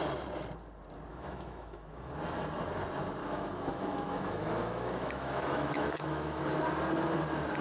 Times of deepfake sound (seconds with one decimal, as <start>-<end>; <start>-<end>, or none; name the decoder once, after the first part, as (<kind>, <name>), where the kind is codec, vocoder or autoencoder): 1.1-2.1 (autoencoder, DAC-VAE); 3.2-6.4